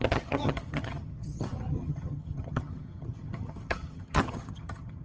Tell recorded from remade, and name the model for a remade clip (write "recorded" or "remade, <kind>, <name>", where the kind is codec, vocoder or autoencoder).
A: remade, vocoder, HiFi-GAN